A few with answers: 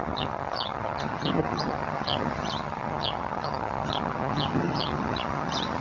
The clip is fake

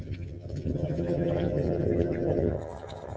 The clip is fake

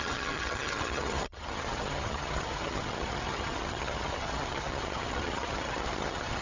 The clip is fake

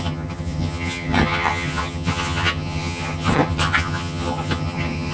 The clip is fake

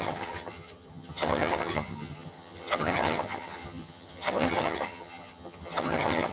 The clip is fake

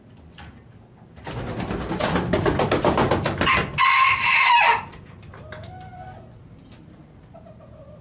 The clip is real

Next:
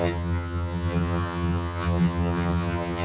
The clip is fake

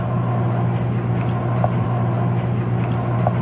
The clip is real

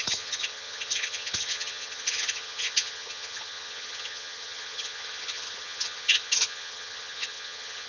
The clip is fake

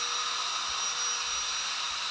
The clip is real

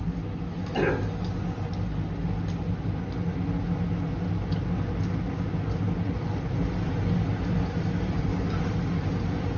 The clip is real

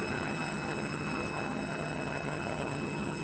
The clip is fake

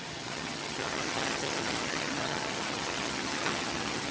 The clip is fake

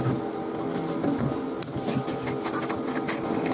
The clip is real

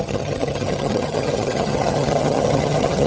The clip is fake